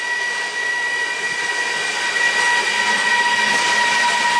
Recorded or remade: recorded